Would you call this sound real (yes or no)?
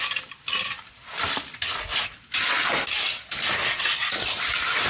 yes